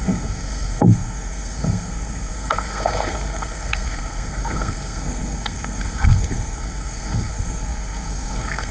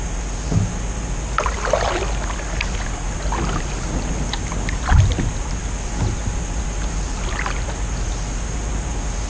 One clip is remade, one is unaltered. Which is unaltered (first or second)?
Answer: second